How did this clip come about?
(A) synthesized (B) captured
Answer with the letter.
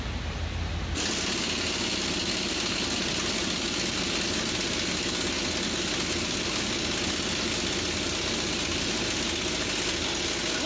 B